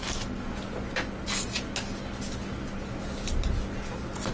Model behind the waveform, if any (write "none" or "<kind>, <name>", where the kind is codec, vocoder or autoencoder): none